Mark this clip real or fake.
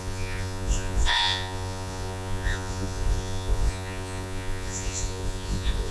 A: fake